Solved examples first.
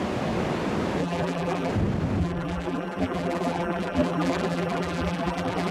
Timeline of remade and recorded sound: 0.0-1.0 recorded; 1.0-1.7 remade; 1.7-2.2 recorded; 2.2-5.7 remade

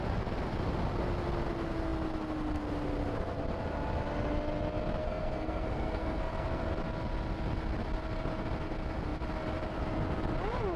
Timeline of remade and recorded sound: 0.0-5.0 recorded; 5.0-6.7 remade; 6.7-10.8 recorded

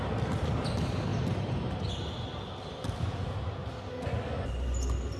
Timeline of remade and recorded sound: 0.0-5.2 recorded

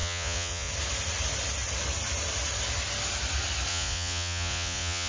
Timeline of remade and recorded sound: 0.0-0.7 remade; 0.7-3.7 recorded; 3.7-5.1 remade

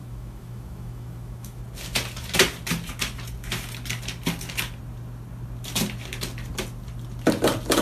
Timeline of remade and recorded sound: 0.0-1.6 remade; 1.6-7.8 recorded

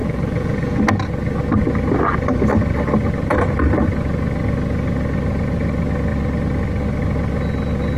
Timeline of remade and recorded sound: 0.0-0.8 remade; 0.8-8.0 recorded

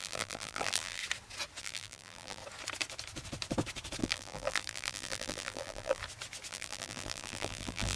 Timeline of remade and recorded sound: 0.0-1.0 remade; 1.0-1.6 recorded; 1.6-2.4 remade; 2.4-4.0 recorded; 4.0-6.0 remade; 6.0-6.5 recorded; 6.5-8.0 remade

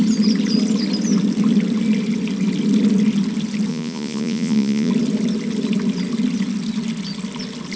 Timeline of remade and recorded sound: 0.0-3.7 recorded; 3.7-4.9 remade; 4.9-7.8 recorded